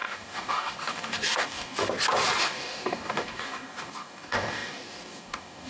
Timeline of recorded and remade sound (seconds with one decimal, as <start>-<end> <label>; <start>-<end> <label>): 0.0-1.8 remade; 1.8-2.4 recorded; 2.4-5.7 remade